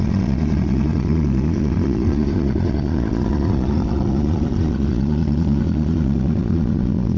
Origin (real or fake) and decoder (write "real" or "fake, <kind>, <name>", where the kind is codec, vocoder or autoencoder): fake, vocoder, Vocos